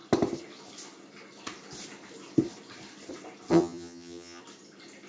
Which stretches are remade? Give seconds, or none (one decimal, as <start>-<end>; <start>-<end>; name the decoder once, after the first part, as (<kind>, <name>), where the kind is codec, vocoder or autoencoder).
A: 3.5-4.4 (vocoder, HiFi-GAN)